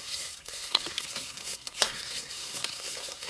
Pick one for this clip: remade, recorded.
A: remade